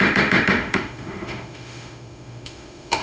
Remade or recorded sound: remade